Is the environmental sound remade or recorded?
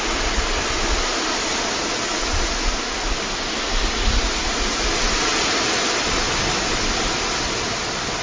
recorded